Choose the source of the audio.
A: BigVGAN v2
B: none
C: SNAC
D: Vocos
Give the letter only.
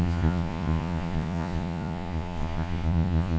D